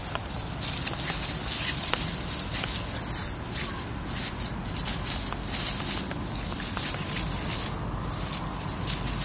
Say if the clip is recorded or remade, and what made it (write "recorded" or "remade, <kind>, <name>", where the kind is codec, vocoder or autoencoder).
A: recorded